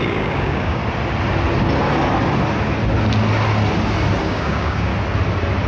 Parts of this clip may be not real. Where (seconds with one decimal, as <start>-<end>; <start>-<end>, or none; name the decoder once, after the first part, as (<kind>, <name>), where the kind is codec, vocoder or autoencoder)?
0.0-0.8 (codec, DAC); 4.2-4.9